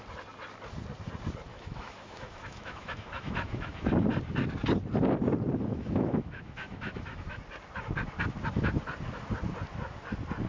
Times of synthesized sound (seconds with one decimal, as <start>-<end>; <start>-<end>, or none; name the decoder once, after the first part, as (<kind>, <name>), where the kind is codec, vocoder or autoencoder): 1.5-3.9 (autoencoder, DAC-VAE); 5.7-7.4